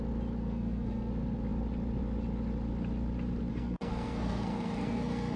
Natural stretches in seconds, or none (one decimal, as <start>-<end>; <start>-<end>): 0.0-0.4; 1.1-3.5